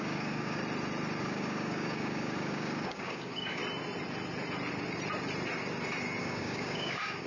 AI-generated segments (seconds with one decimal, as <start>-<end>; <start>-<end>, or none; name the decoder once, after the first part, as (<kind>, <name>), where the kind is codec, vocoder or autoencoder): 0.0-0.6 (codec, DAC); 1.2-3.6; 6.2-7.3